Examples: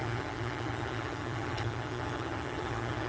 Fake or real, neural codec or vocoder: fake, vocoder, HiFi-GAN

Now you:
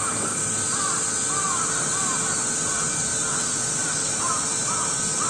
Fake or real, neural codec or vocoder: real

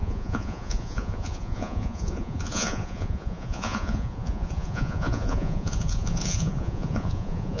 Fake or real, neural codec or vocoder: fake, vocoder, Vocos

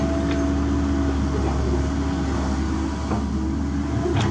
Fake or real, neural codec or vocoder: real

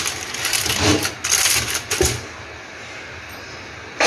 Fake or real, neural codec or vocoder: real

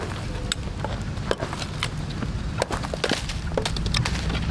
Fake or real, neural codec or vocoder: real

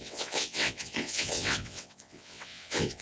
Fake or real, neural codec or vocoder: fake, vocoder, WaveNeXt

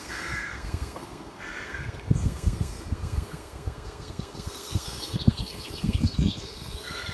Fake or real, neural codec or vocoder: fake, codec, SNAC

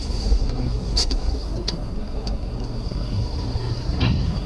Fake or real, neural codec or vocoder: fake, codec, SNAC